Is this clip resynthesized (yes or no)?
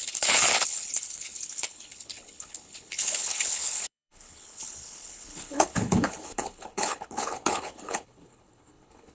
yes